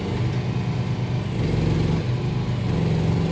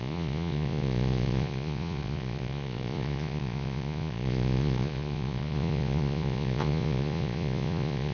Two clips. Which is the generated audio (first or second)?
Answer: second